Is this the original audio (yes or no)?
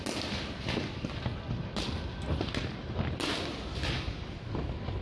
yes